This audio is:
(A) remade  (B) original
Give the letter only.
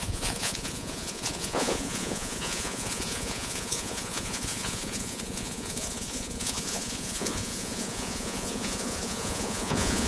A